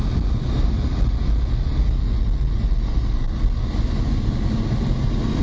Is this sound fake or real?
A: real